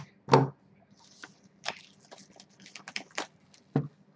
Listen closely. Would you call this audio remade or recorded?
recorded